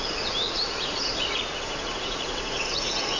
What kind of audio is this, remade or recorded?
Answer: remade